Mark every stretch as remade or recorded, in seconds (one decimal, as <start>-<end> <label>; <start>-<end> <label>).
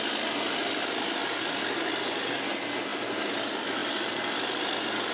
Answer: 0.0-0.6 recorded; 0.6-2.5 remade; 2.5-3.8 recorded; 3.8-4.6 remade; 4.6-5.1 recorded